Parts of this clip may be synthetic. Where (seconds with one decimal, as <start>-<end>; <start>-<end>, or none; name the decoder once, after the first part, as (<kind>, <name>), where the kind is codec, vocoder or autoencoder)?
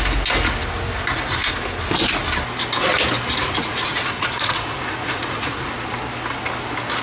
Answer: 3.4-5.7 (vocoder, Vocos)